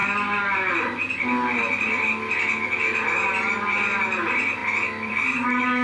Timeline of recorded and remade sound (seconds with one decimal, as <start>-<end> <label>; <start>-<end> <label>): 0.0-5.8 recorded